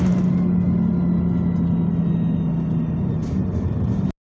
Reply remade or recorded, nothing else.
recorded